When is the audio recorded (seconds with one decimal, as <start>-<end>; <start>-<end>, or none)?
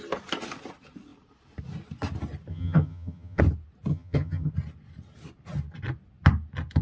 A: 0.0-2.5; 3.4-3.9; 4.5-6.8